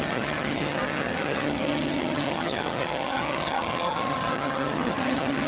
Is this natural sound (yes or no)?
no